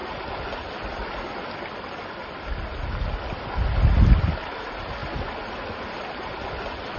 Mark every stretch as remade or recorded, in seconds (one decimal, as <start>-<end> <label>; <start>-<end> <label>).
0.0-7.0 recorded